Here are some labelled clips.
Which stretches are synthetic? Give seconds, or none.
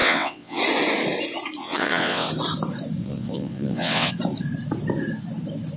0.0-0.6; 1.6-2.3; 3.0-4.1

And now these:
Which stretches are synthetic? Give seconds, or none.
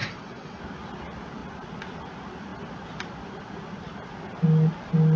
0.0-0.6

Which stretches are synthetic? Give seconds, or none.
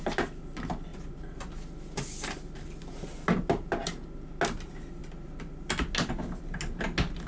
none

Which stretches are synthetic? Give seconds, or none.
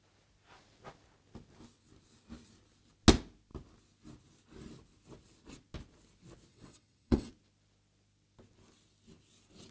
6.5-7.3